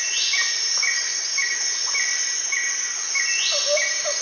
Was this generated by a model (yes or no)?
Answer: no